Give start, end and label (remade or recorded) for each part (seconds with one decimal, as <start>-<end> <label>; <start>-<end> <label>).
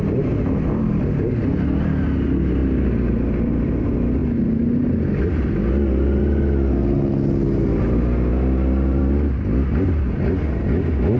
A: 0.0-11.2 recorded